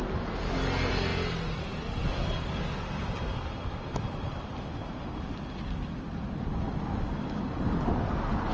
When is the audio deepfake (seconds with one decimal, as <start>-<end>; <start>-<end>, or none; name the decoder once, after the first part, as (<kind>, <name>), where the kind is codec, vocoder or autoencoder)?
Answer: none